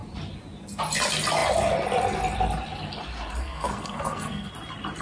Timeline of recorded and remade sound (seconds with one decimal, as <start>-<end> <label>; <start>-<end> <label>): 0.0-3.4 recorded; 3.4-4.5 remade; 4.5-5.0 recorded